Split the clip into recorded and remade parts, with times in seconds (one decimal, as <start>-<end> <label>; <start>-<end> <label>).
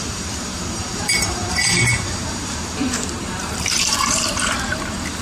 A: 0.0-5.2 remade